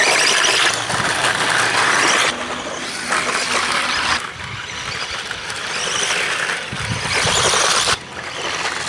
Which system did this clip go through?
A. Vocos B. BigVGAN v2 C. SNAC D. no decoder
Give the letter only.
D